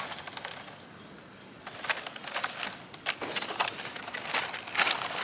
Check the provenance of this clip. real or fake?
real